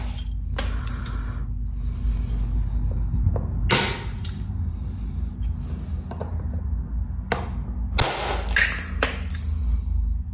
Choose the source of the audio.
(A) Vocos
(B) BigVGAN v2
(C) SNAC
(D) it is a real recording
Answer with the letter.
D